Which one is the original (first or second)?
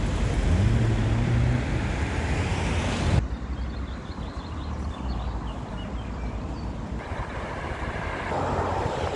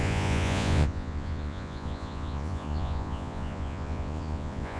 first